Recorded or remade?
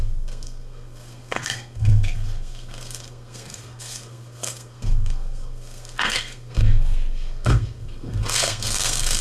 remade